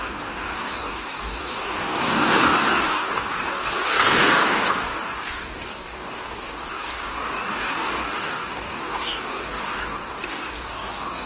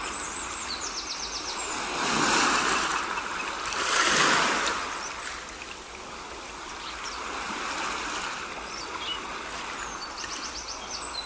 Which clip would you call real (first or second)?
second